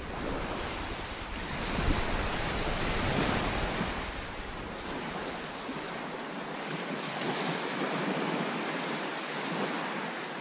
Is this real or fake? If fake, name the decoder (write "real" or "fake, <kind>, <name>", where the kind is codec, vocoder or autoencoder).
fake, vocoder, BigVGAN v2